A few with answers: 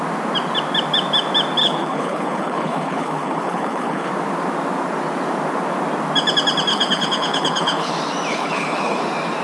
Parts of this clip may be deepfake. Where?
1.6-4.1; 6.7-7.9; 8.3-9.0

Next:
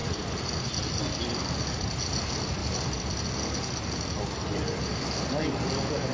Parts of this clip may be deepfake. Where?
none

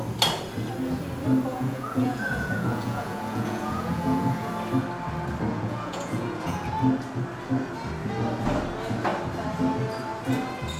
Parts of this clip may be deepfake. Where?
1.5-4.5; 5.5-6.7

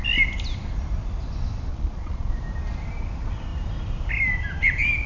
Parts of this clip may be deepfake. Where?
1.7-2.3

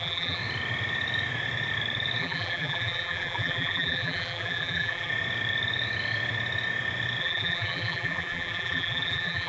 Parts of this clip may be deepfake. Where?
0.0-0.4; 2.2-5.1; 7.2-9.5